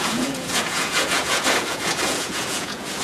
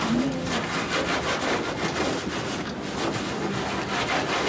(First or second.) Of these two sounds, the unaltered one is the second